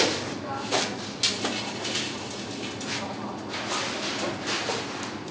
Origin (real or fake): real